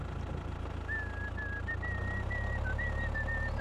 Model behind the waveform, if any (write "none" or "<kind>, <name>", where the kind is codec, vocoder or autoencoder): none